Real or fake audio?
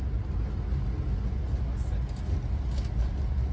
real